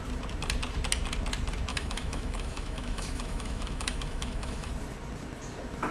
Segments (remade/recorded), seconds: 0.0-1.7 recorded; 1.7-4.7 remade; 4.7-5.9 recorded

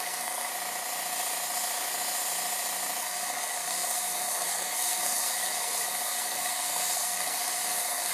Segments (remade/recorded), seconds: 0.0-0.5 remade; 0.5-3.0 recorded; 3.0-8.1 remade

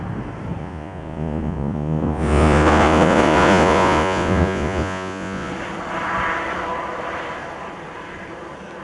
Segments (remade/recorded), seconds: 0.0-0.6 recorded; 0.6-5.5 remade; 5.5-8.8 recorded

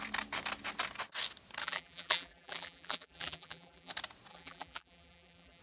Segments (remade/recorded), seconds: 0.0-1.6 recorded; 1.6-3.9 remade; 3.9-4.3 recorded; 4.3-5.6 remade

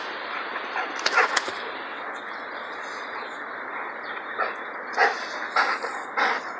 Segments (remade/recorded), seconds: 0.0-1.9 recorded; 1.9-2.4 remade; 2.4-6.6 recorded